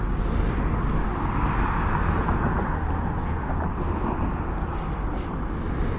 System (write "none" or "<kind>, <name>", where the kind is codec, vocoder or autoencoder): none